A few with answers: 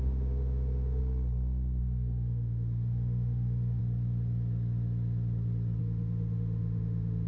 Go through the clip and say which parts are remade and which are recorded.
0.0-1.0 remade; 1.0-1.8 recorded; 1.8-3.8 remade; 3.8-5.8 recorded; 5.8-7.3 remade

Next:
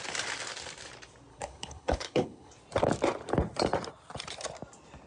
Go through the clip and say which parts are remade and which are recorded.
0.0-1.3 recorded; 1.3-2.5 remade; 2.5-5.1 recorded

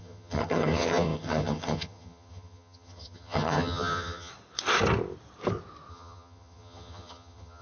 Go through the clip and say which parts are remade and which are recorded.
0.0-4.3 remade; 4.3-5.9 recorded; 5.9-7.6 remade

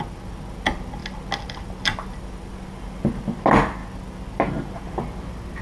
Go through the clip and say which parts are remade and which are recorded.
0.0-5.6 recorded

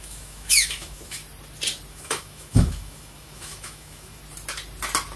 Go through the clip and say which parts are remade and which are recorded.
0.0-1.2 remade; 1.2-1.9 recorded; 1.9-4.2 remade; 4.2-5.2 recorded

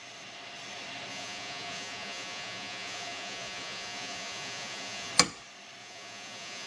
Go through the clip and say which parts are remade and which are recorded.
0.0-1.1 recorded; 1.1-5.1 remade; 5.1-5.8 recorded; 5.8-6.7 remade